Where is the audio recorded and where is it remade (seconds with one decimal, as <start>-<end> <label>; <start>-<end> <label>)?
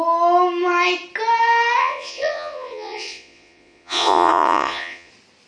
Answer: 0.0-1.8 recorded; 1.8-5.1 remade; 5.1-5.5 recorded